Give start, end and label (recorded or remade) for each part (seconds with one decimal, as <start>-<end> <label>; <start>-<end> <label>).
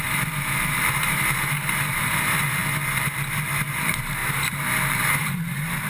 0.0-2.6 remade; 2.6-3.8 recorded; 3.8-5.9 remade